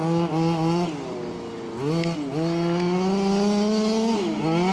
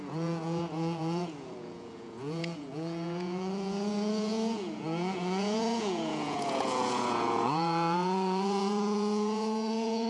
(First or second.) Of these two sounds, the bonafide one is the first